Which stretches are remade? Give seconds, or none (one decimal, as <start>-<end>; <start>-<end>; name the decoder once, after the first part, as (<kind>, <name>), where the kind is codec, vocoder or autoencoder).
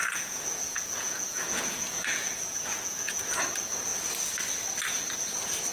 0.0-3.4 (vocoder, Vocos)